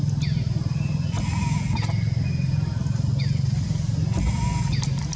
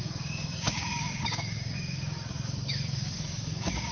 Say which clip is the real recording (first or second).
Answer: first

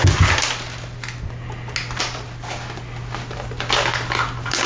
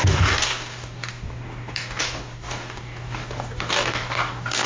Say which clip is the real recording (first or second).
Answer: first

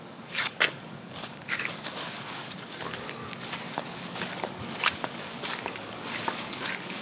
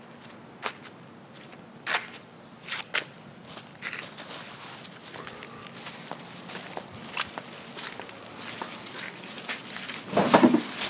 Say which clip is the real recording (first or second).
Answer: second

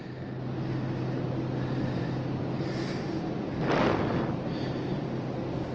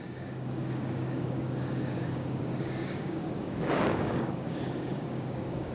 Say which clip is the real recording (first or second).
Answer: first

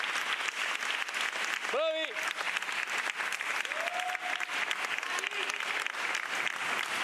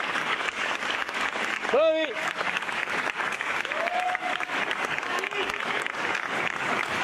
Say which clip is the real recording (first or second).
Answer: first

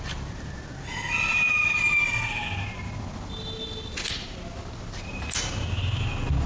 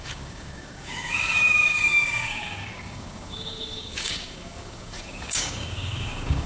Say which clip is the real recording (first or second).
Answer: first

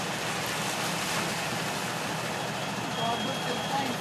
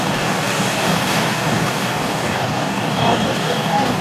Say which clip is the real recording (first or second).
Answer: first